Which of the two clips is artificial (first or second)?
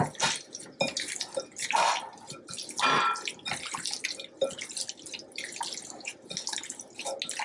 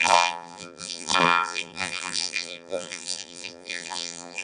second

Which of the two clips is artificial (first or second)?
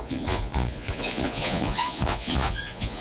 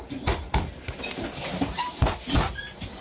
first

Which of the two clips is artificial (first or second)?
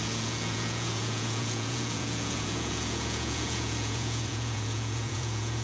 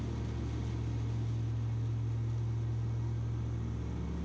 first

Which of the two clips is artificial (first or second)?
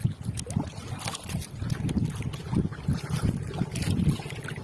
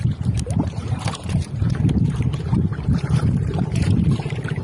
second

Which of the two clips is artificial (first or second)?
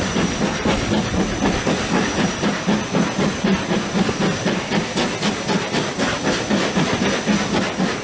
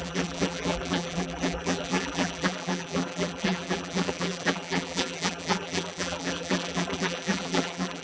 second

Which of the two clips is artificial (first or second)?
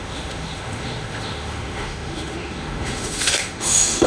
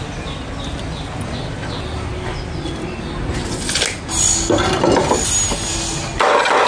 first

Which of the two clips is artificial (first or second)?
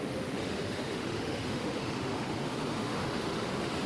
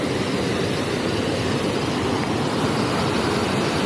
first